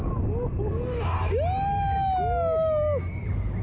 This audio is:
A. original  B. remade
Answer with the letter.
A